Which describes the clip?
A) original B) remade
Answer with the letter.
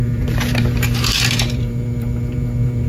B